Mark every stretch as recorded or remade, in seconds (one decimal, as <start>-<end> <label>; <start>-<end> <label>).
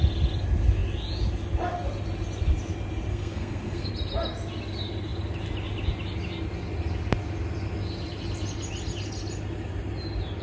0.0-3.1 recorded; 3.1-3.9 remade; 3.9-10.4 recorded